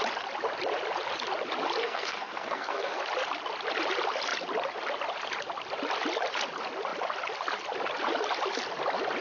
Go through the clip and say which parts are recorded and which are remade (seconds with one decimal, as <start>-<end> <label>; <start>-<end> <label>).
0.0-1.8 recorded; 1.8-3.0 remade; 3.0-9.2 recorded